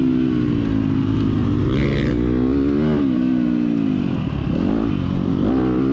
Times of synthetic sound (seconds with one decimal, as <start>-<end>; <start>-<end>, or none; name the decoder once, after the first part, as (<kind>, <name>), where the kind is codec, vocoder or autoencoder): none